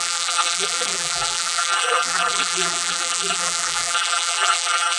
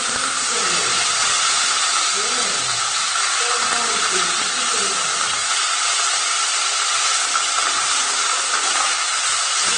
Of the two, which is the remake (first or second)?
first